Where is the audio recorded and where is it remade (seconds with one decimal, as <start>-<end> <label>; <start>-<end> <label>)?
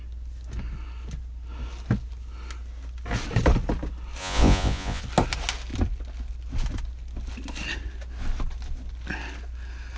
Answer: 0.0-4.2 recorded; 4.2-5.0 remade; 5.0-10.0 recorded